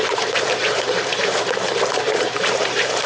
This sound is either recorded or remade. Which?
remade